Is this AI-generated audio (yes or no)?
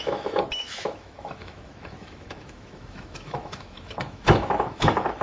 yes